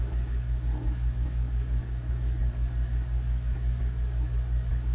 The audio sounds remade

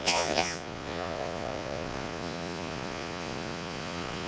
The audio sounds remade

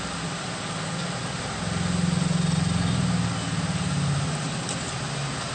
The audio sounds recorded